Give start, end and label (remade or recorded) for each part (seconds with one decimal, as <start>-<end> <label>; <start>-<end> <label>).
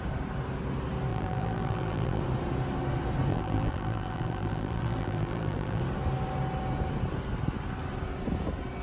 0.0-1.1 recorded; 1.1-2.2 remade; 2.2-3.3 recorded; 3.3-5.8 remade; 5.8-8.8 recorded